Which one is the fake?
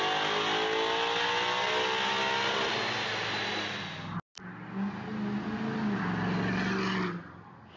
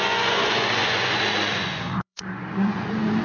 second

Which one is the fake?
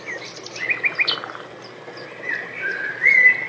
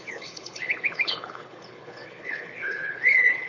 second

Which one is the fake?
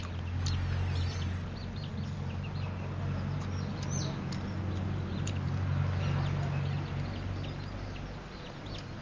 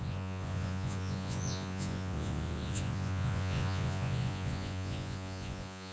second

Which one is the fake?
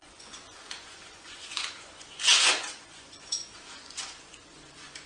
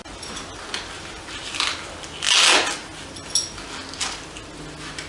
first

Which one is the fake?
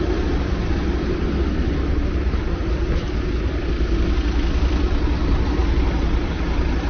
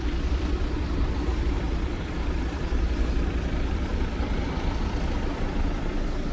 second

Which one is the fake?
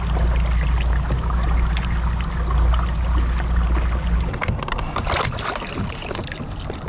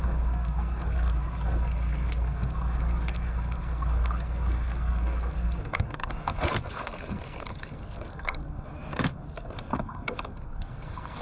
second